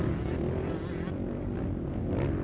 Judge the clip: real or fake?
real